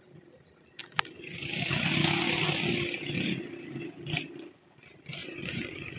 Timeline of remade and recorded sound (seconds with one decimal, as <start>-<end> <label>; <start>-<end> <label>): 0.0-5.2 recorded; 5.2-6.0 remade